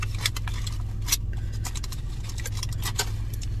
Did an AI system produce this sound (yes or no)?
no